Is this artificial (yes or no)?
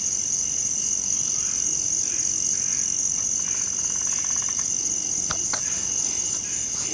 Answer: no